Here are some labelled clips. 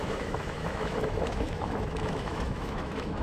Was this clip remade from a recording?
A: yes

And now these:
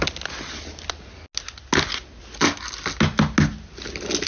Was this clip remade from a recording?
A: no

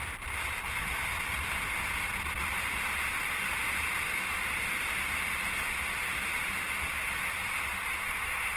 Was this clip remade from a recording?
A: no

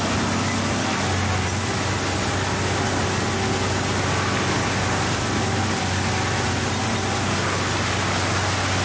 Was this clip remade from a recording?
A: no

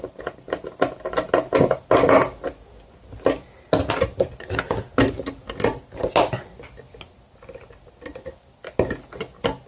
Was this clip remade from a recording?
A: no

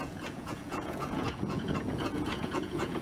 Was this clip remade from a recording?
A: yes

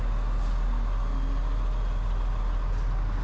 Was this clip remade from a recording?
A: no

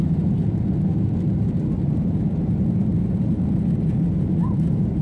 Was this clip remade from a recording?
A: no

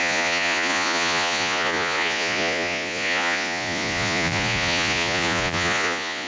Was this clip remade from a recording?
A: yes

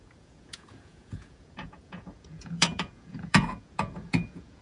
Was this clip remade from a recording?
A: yes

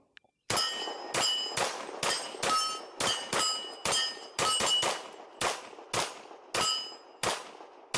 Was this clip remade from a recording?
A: no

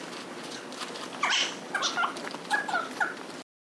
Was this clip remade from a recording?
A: no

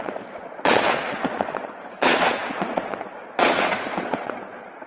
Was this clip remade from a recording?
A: yes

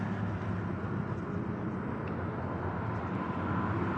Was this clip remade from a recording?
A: no